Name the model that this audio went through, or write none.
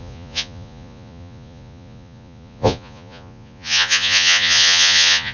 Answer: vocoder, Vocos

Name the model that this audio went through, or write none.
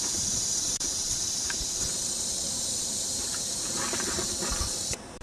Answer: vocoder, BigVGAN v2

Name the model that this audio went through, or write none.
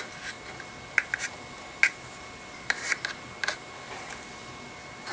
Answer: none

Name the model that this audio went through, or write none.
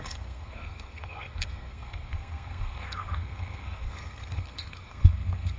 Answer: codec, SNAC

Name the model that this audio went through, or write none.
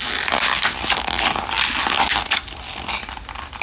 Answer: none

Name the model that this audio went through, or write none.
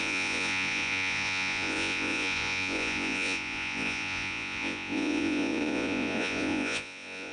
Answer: vocoder, Vocos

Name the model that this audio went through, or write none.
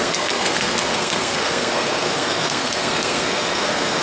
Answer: codec, SNAC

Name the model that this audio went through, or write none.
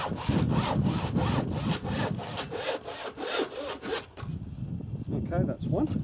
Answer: none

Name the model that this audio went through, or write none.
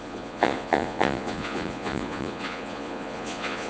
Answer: vocoder, Vocos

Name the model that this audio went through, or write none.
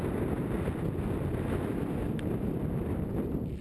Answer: none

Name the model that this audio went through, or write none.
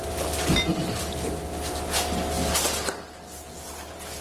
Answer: none